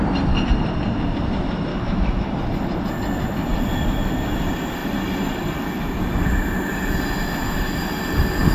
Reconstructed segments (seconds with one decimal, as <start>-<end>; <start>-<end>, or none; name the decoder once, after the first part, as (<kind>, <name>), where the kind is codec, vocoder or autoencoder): 1.7-2.4 (autoencoder, DAC-VAE)